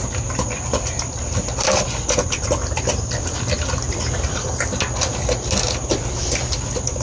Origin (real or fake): real